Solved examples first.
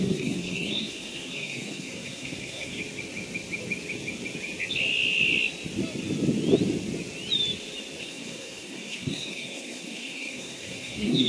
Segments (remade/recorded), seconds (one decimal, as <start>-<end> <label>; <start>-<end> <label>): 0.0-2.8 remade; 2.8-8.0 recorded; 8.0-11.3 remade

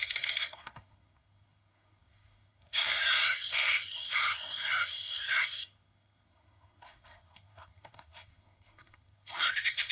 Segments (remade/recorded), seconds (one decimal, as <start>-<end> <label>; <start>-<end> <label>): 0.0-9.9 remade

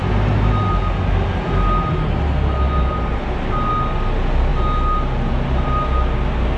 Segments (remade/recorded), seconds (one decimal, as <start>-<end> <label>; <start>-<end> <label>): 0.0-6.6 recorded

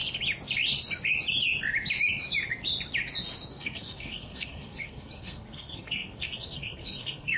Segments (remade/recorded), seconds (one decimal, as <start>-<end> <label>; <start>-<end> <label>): 0.0-3.5 recorded; 3.5-7.4 remade

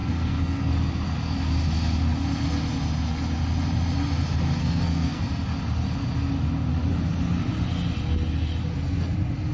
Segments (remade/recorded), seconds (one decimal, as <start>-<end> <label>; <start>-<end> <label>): 0.0-0.7 remade; 0.7-4.6 recorded; 4.6-5.2 remade; 5.2-9.5 recorded